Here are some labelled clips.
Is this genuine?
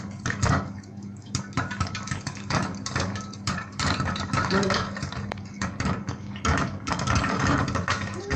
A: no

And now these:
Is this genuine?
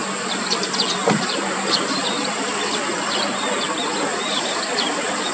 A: no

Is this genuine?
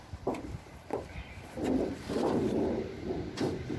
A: yes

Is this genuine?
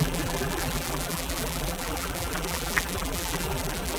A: no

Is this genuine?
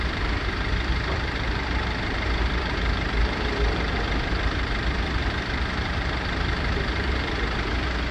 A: no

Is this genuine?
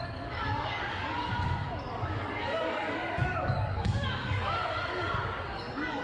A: no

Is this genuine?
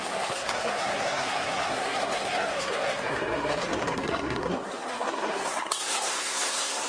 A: no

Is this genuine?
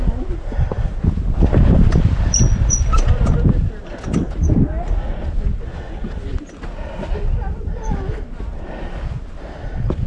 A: yes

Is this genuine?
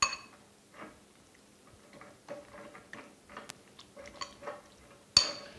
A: yes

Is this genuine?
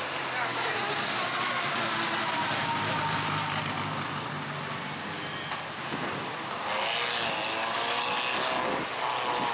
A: yes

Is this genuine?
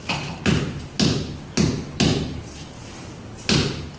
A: yes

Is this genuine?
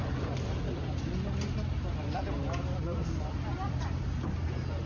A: yes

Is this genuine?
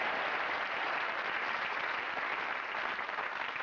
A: yes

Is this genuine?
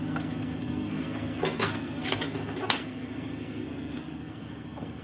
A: no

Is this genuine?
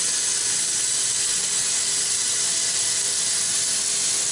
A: yes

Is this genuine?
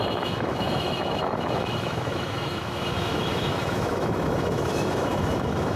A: no